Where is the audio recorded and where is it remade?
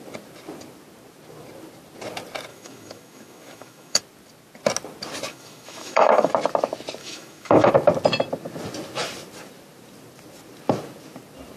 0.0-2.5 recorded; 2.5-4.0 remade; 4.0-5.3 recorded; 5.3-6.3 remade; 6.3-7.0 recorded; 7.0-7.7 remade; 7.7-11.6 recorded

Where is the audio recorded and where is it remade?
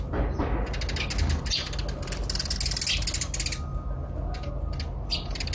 0.0-5.5 recorded